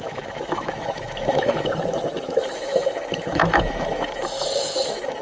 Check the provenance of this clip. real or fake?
fake